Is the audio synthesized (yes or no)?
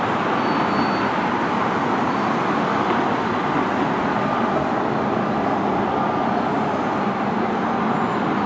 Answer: no